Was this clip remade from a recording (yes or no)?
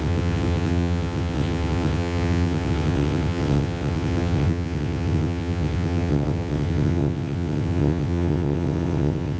yes